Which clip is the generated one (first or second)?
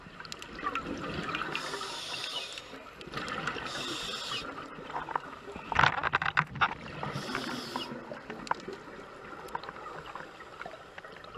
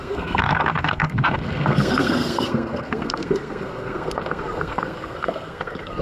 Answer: second